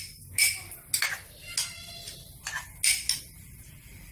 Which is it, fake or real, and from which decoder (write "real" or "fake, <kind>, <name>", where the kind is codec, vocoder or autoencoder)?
real